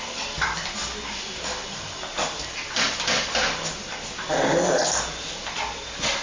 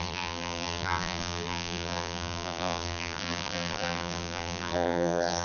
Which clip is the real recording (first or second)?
first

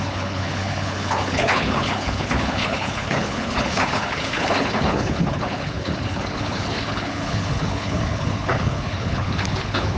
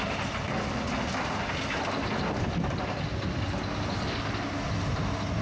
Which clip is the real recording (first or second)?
second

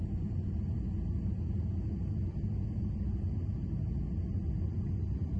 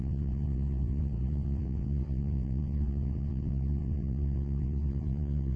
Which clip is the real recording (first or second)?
first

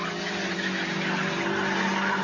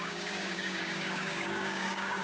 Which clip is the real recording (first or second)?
first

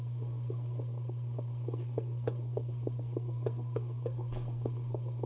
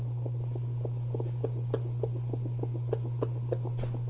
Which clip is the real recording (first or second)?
second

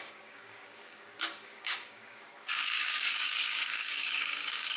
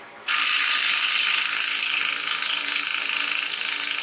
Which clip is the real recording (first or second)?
second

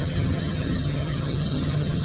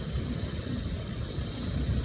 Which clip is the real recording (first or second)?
second